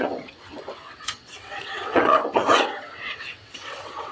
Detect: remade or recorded remade